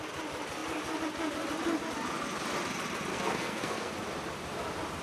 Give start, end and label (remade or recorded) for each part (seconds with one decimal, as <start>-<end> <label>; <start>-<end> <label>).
0.0-3.1 recorded; 3.1-3.9 remade; 3.9-5.0 recorded